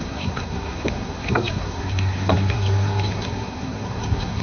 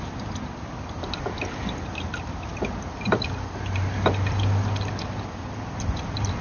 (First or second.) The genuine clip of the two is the second